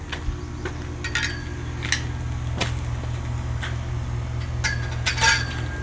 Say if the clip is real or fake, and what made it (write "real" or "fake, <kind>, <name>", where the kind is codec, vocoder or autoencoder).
real